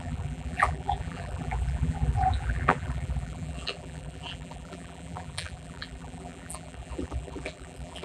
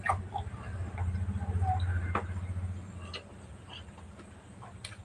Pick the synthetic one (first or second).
first